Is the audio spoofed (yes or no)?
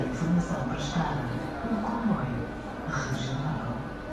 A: yes